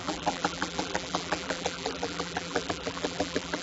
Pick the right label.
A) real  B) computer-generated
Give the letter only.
B